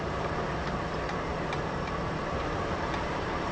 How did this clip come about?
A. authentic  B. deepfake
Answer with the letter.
B